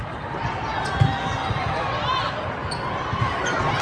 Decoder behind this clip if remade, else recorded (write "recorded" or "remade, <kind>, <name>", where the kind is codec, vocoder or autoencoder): recorded